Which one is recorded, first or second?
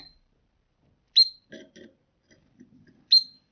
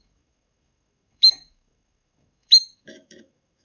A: first